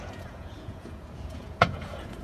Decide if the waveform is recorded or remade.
remade